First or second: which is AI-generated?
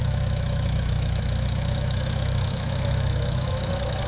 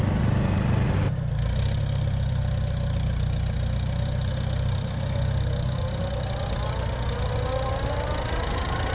first